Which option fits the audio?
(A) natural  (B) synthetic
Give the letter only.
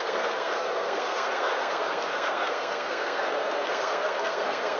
B